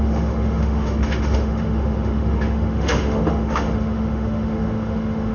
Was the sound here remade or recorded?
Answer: remade